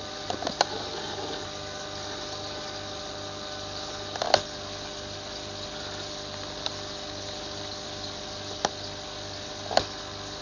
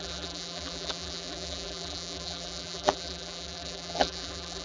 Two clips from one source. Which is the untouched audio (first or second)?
first